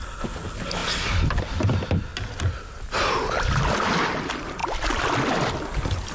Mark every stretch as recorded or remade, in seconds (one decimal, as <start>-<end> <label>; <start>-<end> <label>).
0.0-4.6 recorded; 4.6-5.5 remade; 5.5-6.1 recorded